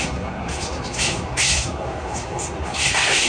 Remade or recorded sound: remade